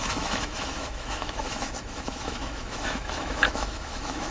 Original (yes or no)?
no